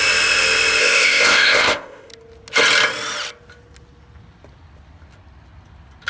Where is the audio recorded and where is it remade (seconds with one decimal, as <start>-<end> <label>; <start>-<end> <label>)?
0.0-0.8 recorded; 0.8-2.1 remade; 2.1-6.1 recorded